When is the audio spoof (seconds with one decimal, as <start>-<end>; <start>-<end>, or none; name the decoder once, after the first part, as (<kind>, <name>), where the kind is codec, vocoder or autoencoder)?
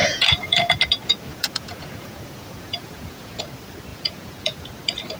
0.0-0.8 (vocoder, Vocos); 1.3-3.4; 3.9-4.7